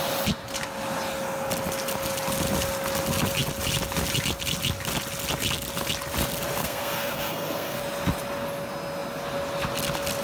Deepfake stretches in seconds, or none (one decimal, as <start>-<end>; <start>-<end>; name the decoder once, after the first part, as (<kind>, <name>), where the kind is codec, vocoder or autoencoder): 6.6-7.8 (codec, SNAC)